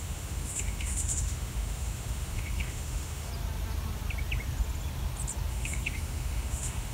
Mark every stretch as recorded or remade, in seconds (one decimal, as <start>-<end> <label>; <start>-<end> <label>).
0.0-3.3 remade; 3.3-5.5 recorded; 5.5-6.9 remade